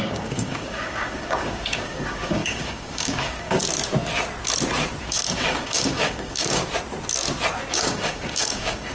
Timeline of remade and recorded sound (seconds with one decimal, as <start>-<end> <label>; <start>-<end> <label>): 0.0-3.6 remade; 3.6-5.0 recorded; 5.0-6.6 remade; 6.6-7.7 recorded; 7.7-8.9 remade